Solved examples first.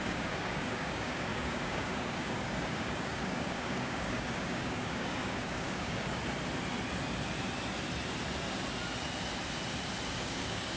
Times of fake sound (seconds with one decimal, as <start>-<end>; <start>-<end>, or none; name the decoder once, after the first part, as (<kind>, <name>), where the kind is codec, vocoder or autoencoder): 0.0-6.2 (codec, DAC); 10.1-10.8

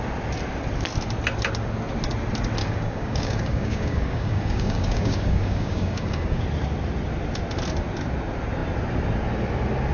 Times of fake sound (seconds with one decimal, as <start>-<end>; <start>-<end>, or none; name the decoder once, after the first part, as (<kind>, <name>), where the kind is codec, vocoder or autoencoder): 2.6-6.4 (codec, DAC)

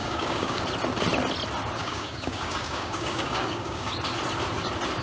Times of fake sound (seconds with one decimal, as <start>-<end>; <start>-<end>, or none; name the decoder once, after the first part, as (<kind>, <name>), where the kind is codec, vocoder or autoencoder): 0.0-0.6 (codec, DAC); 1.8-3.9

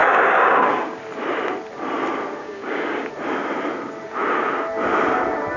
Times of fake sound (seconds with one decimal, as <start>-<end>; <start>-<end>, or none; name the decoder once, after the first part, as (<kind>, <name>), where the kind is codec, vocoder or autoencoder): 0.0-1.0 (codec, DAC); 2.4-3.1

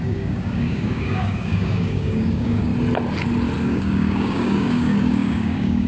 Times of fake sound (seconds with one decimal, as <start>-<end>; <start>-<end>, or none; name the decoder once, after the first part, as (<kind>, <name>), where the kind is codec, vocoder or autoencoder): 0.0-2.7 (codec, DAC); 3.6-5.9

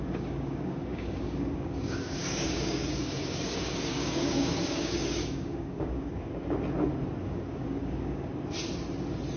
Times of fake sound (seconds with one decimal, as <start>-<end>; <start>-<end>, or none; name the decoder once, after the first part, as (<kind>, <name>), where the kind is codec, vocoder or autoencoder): 0.0-6.3 (codec, DAC); 7.2-8.3

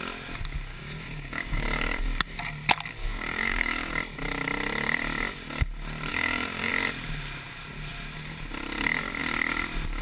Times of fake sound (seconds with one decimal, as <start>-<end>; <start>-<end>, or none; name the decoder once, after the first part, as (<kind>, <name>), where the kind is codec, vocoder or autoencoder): 0.7-2.4 (codec, DAC); 3.0-3.9; 6.1-6.7